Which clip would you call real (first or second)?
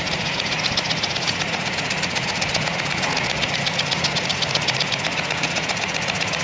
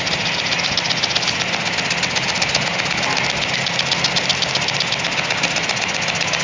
second